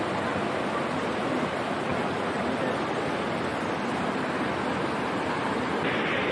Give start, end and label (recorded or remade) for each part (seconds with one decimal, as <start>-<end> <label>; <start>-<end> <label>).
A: 0.0-6.3 recorded